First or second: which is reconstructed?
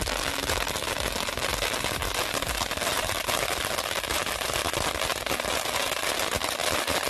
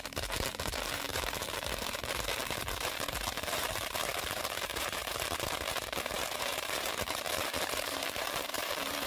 second